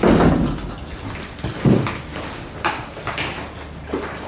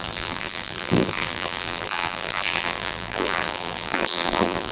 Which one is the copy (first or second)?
second